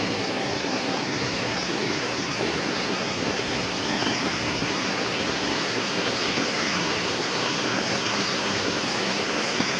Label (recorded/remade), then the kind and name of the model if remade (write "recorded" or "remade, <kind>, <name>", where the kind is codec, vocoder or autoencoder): remade, codec, SNAC